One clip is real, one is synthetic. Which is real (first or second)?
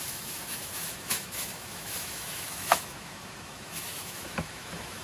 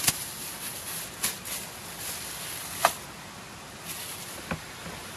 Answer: second